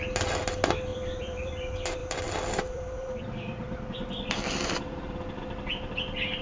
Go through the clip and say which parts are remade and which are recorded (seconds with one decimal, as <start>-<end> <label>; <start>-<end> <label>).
0.0-0.9 recorded; 0.9-1.5 remade; 1.5-2.0 recorded; 2.0-5.4 remade; 5.4-6.4 recorded